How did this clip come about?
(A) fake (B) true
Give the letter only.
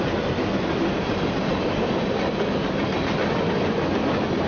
B